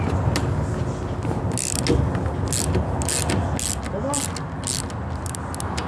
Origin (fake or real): real